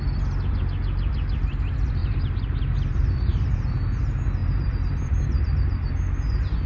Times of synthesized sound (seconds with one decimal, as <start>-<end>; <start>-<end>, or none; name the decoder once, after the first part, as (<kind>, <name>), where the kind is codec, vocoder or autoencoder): 2.0-3.1 (vocoder, BigVGAN v2); 4.4-5.9